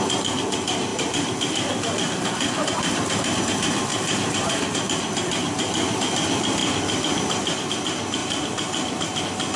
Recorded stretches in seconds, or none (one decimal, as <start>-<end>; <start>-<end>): 0.0-0.9; 3.4-3.9; 4.7-8.2; 9.2-9.6